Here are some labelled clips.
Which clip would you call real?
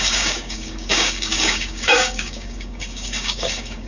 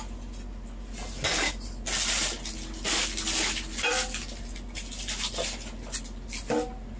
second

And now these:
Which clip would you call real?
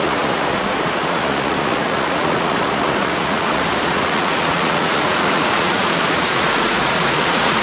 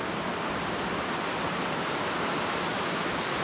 second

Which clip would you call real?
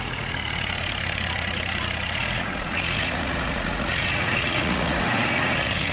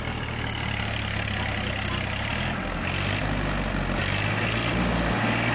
second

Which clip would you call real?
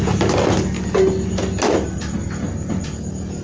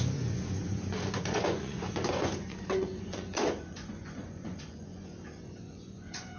first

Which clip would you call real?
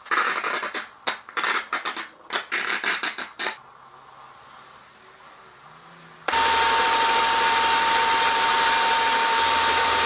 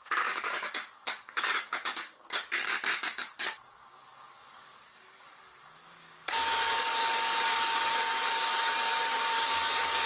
first